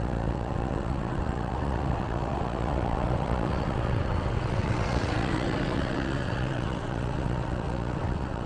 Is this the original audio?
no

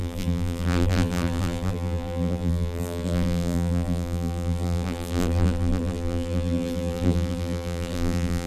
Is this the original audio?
no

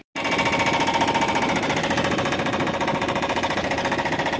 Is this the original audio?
yes